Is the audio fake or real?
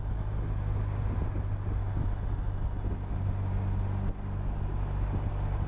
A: real